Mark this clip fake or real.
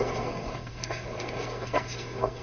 fake